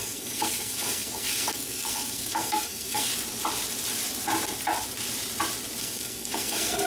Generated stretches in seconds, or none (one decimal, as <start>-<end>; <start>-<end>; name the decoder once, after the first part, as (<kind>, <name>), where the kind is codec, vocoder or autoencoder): 0.0-3.1 (codec, SNAC); 5.8-6.9